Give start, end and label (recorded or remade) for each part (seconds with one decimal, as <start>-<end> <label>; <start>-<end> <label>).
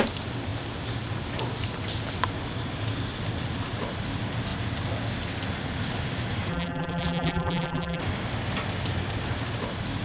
0.0-6.5 recorded; 6.5-8.0 remade; 8.0-10.0 recorded